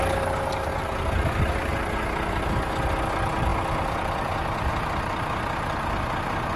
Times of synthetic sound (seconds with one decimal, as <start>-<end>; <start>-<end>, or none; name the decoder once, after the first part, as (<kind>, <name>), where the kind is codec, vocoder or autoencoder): 0.7-1.7 (vocoder, BigVGAN v2); 3.5-4.7